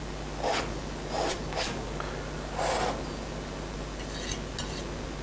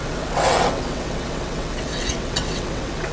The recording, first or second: first